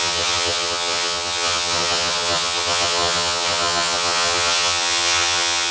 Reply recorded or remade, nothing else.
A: remade